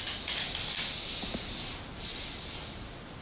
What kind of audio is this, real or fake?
real